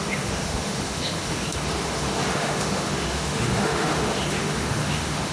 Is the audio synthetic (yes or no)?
yes